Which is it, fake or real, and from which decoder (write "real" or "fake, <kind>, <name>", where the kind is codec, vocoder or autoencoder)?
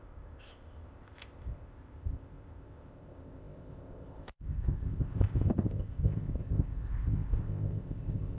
fake, codec, ZipCodec